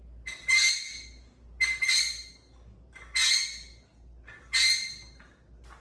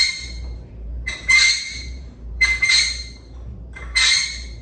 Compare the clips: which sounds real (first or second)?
first